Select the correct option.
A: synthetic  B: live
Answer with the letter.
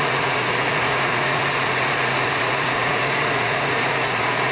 A